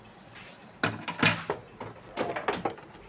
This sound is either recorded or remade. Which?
recorded